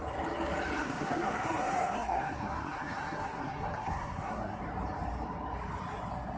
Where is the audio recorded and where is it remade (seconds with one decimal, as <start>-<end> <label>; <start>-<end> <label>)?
0.0-0.8 recorded; 0.8-4.6 remade; 4.6-6.4 recorded